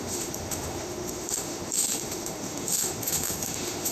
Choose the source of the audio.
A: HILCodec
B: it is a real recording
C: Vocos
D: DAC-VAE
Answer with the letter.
D